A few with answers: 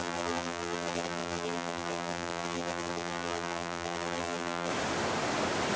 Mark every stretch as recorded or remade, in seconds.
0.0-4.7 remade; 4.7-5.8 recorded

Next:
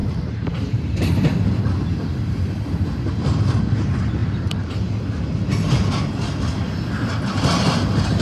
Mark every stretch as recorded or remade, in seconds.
0.0-1.0 remade; 1.0-4.2 recorded; 4.2-4.9 remade; 4.9-8.2 recorded

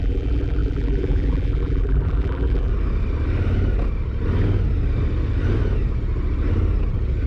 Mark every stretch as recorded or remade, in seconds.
0.0-2.7 remade; 2.7-7.3 recorded